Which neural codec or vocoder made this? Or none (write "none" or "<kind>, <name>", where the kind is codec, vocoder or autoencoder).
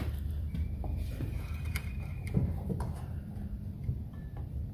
vocoder, BigVGAN v2